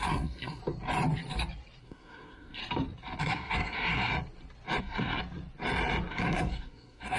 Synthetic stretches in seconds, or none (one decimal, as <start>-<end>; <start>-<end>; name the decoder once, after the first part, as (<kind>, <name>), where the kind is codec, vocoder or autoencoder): 0.0-0.6 (codec, SNAC); 1.8-2.6; 3.2-4.1; 4.8-5.2; 6.1-7.2